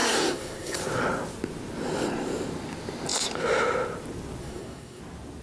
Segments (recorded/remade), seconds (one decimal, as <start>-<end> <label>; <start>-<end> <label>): 0.0-0.8 remade; 0.8-4.4 recorded; 4.4-5.0 remade; 5.0-5.4 recorded